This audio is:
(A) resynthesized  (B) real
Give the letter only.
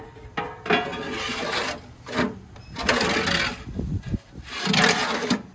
B